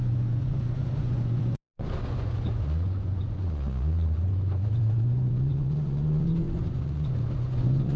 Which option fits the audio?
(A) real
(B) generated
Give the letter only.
B